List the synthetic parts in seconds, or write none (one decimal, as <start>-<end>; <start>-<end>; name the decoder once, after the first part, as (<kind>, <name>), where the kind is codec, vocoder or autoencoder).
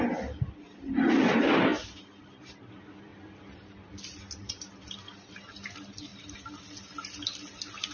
none